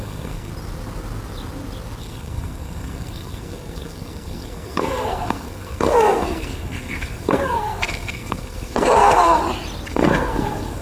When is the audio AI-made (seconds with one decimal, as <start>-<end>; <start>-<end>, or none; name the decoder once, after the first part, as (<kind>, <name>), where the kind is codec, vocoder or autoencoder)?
0.0-0.5 (codec, SNAC); 2.0-9.4; 9.9-10.8